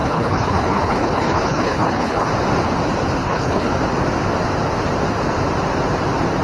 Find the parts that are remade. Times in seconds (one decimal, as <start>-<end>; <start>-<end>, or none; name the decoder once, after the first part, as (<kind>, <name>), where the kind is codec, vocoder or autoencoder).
0.0-2.3 (codec, HILCodec); 3.2-3.7